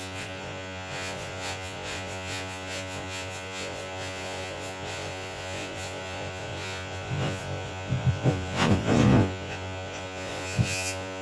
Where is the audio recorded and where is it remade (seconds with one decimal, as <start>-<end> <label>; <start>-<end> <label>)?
0.0-11.2 remade

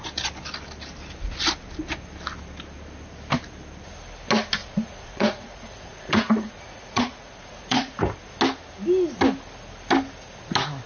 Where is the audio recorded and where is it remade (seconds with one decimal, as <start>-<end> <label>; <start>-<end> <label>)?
0.0-4.6 recorded; 4.6-8.0 remade; 8.0-10.9 recorded

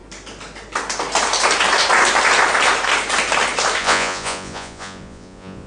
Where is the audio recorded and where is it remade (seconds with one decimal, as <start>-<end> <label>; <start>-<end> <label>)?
0.0-3.8 recorded; 3.8-5.7 remade

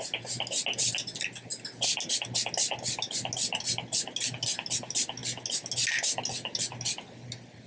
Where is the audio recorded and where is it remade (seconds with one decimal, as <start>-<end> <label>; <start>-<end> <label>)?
0.0-7.7 recorded

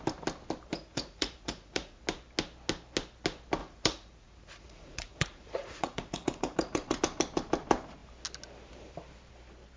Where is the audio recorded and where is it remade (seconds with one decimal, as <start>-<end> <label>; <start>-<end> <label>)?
0.0-0.7 recorded; 0.7-2.0 remade; 2.0-3.6 recorded; 3.6-7.0 remade; 7.0-9.8 recorded